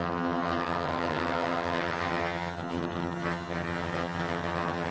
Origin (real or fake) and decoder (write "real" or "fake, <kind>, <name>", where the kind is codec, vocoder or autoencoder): fake, vocoder, HiFi-GAN